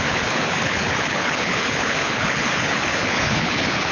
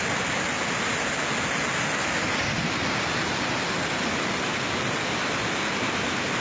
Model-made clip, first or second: first